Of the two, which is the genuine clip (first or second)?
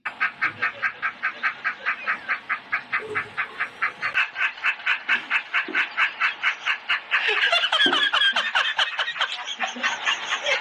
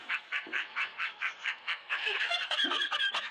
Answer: first